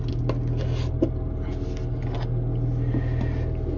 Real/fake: real